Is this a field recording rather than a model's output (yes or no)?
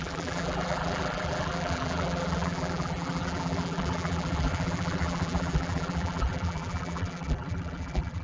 no